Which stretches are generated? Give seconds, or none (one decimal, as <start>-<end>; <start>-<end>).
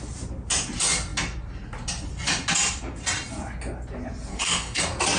4.3-4.8